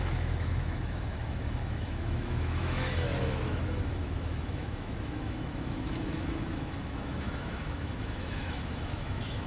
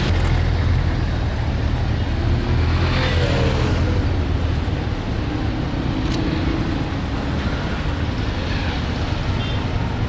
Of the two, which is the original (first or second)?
second